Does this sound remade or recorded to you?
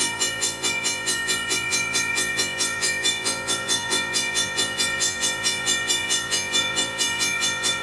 remade